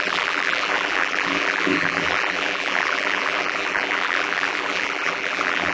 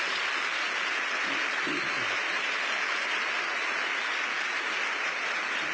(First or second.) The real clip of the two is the second